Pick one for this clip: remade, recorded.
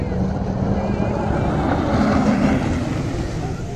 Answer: recorded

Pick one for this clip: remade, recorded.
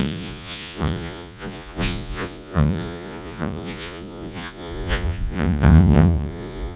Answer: remade